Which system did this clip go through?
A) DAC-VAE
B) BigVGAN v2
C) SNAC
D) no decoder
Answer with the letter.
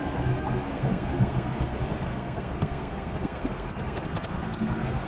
C